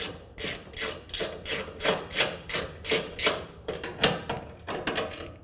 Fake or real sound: real